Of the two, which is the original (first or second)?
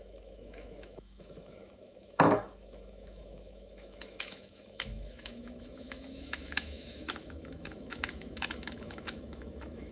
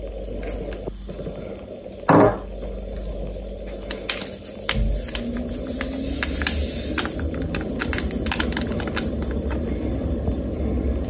second